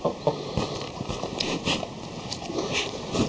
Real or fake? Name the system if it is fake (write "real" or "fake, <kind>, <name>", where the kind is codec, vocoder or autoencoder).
fake, vocoder, BigVGAN v2